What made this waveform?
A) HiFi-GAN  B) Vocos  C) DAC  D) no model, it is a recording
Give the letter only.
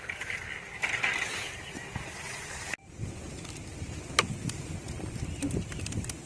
D